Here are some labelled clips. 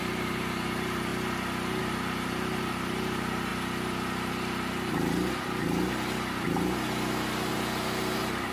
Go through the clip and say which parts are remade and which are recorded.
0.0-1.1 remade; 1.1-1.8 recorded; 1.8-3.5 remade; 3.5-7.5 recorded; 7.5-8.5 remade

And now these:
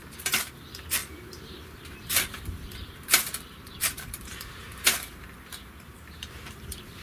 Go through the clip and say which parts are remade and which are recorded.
0.0-7.0 remade

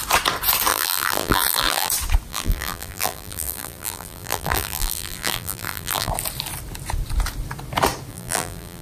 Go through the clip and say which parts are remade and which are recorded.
0.0-0.7 recorded; 0.7-1.9 remade; 1.9-2.3 recorded; 2.3-6.1 remade; 6.1-8.1 recorded; 8.1-8.8 remade

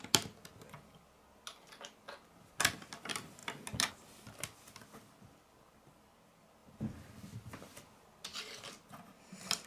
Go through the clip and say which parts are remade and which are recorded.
0.0-9.7 recorded

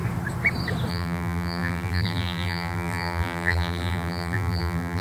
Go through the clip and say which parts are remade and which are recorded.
0.0-0.9 recorded; 0.9-5.0 remade

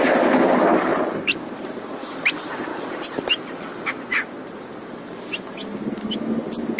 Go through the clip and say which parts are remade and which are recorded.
0.0-0.9 recorded; 0.9-1.7 remade; 1.7-2.7 recorded; 2.7-4.0 remade; 4.0-6.8 recorded

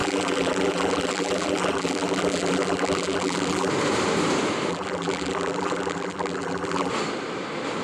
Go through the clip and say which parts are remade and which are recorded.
0.0-3.7 remade; 3.7-4.7 recorded; 4.7-6.9 remade; 6.9-7.8 recorded

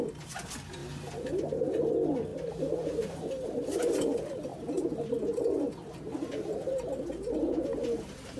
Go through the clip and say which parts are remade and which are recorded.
0.0-2.3 recorded; 2.3-3.2 remade; 3.2-8.4 recorded